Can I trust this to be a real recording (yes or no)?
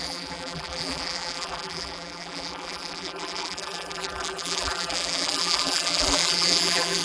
no